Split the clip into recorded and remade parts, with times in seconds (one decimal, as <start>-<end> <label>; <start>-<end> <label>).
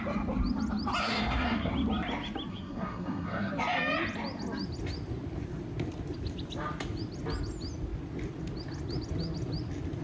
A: 0.0-1.0 recorded; 1.0-1.7 remade; 1.7-2.5 recorded; 2.5-3.5 remade; 3.5-10.0 recorded